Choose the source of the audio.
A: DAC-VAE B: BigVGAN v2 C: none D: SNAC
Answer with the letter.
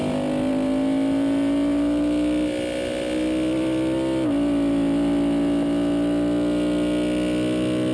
C